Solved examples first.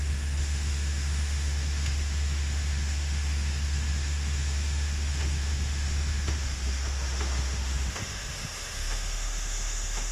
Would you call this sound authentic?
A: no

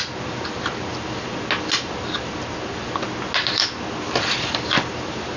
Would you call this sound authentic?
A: yes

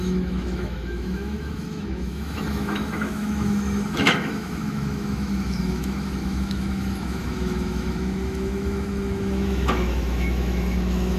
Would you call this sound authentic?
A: no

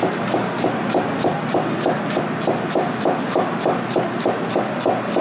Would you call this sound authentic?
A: yes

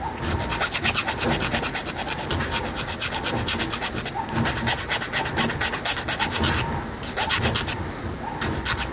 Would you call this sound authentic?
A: yes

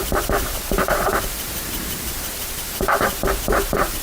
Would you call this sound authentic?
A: no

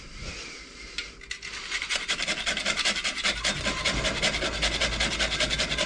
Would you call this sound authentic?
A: yes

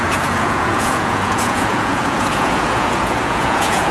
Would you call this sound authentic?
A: no